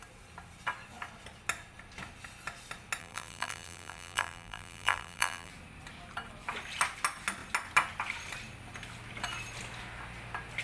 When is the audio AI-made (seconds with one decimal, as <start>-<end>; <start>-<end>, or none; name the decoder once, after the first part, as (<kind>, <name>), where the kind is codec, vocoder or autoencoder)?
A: 3.0-5.5 (vocoder, BigVGAN v2)